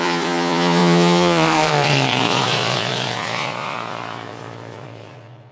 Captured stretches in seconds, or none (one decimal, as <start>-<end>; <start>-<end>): none

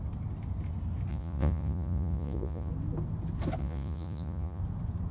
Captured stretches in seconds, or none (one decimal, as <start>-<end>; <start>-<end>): 0.0-1.1; 2.7-3.6; 4.6-5.1

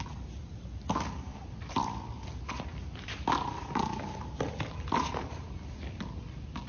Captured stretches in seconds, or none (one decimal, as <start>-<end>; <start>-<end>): 0.0-6.7

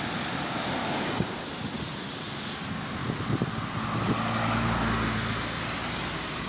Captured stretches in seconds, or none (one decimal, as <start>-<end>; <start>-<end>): 0.0-0.8; 1.5-6.5